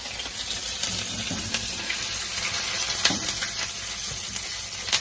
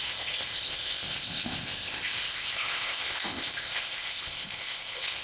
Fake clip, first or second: second